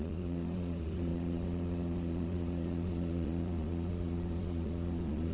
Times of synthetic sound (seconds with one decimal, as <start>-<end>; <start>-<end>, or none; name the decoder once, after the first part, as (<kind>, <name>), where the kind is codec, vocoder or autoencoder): 0.0-5.3 (vocoder, Vocos)